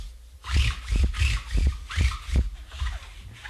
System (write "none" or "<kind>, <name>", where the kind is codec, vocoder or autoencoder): none